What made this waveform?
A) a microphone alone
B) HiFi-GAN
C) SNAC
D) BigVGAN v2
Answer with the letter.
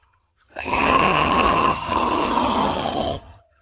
B